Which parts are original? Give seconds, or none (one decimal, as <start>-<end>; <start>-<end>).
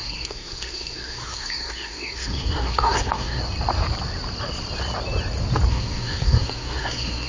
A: 3.4-5.7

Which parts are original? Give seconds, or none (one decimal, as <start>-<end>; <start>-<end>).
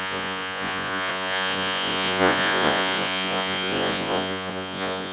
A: none